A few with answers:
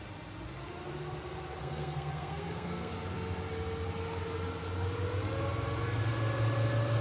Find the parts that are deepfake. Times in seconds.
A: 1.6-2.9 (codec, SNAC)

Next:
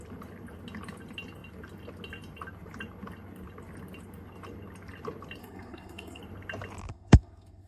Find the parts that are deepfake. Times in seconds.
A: 5.4-6.2 (codec, SNAC); 6.9-7.7